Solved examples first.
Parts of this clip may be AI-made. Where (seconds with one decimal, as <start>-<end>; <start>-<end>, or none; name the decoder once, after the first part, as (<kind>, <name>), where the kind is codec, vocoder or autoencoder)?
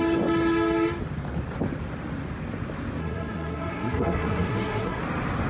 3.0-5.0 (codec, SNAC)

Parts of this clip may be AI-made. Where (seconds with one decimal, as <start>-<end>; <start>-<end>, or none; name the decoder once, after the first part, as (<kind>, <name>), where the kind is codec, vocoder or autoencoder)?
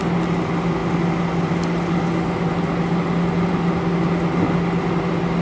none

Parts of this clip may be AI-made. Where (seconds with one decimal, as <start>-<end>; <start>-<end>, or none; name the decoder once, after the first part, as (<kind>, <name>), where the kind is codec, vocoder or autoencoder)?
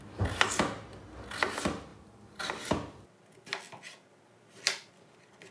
none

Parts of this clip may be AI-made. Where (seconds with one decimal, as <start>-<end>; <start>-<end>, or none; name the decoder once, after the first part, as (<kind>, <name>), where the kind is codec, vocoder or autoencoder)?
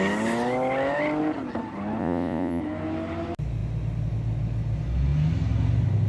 2.0-2.6 (vocoder, Vocos)